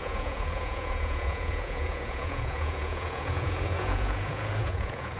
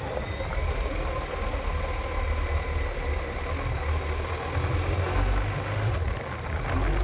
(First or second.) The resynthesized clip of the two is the first